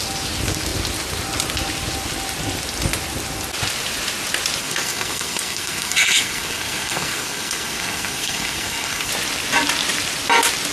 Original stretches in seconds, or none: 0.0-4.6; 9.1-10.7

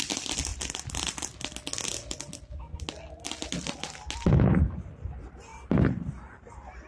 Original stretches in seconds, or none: 0.0-6.9

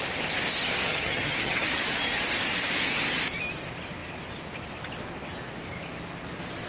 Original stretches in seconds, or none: 0.0-0.9; 1.7-6.7

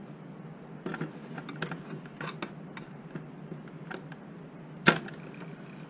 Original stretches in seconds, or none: 0.0-5.9

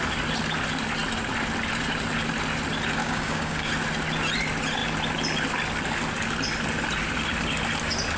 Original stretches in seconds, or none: 0.0-3.0; 3.7-8.2

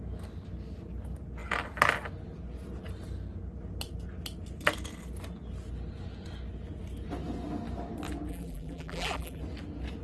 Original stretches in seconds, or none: 0.0-8.3; 9.4-10.0

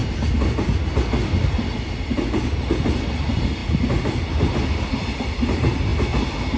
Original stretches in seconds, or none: 0.0-6.6